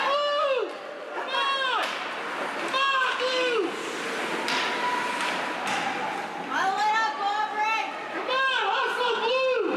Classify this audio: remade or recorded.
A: recorded